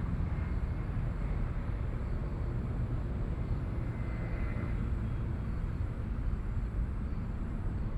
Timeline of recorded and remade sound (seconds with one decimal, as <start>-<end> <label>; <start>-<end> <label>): 0.0-2.0 remade; 2.0-5.7 recorded; 5.7-8.0 remade